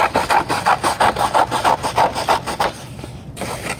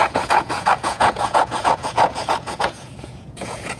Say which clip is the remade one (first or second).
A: second